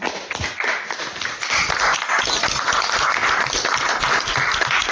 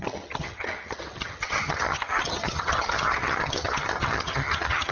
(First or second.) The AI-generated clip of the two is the second